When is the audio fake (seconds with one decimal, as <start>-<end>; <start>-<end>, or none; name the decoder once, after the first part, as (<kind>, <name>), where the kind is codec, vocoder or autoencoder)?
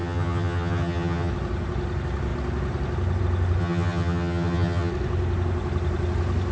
0.0-1.3 (vocoder, HiFi-GAN); 3.6-4.9